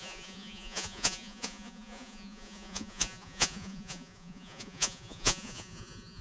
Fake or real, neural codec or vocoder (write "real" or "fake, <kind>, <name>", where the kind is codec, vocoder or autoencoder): fake, vocoder, Vocos